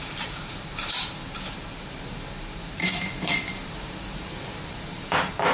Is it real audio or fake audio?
fake